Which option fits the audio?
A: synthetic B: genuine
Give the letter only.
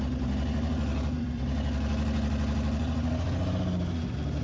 B